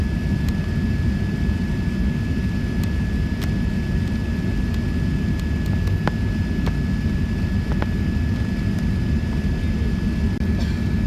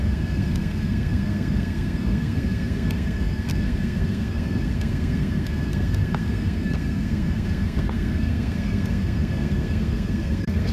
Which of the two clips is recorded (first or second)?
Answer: first